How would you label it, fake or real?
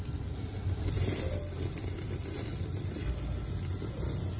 real